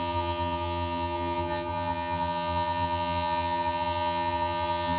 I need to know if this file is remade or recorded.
remade